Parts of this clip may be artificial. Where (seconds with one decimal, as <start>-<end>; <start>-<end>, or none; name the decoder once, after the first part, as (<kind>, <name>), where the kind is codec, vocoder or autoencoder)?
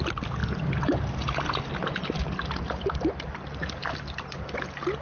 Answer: none